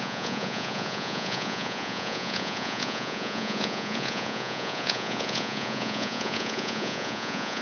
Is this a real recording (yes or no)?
no